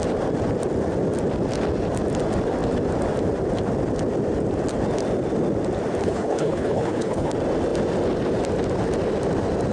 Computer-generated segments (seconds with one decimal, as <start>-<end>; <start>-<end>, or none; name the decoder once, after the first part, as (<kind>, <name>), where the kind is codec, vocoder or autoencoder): 6.0-7.3 (codec, HILCodec)